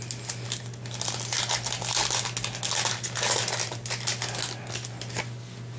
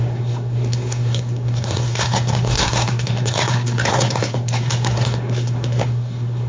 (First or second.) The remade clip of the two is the second